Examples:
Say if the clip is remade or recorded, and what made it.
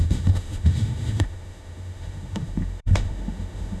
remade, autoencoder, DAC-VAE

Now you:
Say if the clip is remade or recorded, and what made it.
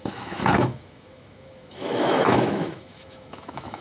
remade, autoencoder, DAC-VAE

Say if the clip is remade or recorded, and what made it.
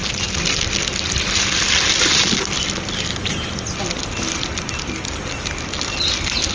recorded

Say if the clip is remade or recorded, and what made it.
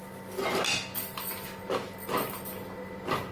recorded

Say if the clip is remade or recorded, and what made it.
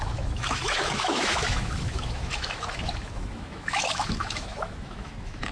remade, autoencoder, DAC-VAE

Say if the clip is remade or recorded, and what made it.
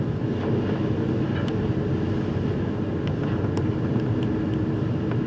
recorded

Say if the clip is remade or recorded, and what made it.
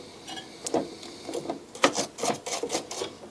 recorded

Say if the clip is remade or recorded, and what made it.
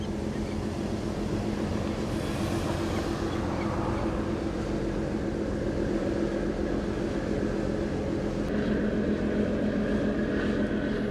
recorded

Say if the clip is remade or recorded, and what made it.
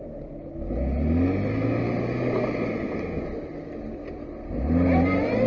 recorded